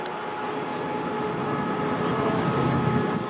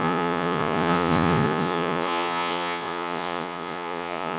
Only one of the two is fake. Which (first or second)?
second